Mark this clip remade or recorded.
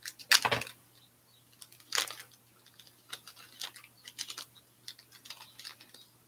recorded